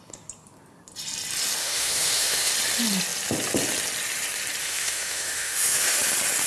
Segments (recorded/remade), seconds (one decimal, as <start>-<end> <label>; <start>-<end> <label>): 0.0-1.6 recorded; 1.6-2.5 remade; 2.5-4.6 recorded; 4.6-6.0 remade; 6.0-6.5 recorded